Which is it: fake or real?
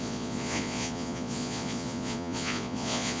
fake